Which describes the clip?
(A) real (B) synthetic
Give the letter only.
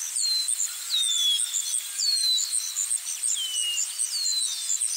A